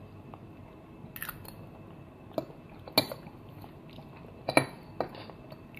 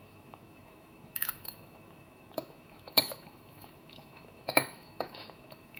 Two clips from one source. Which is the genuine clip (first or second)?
first